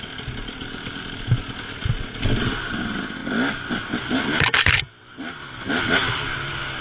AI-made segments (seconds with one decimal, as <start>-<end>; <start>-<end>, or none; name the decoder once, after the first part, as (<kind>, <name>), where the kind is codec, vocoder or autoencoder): none